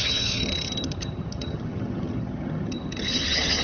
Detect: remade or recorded remade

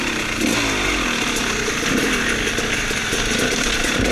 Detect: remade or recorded recorded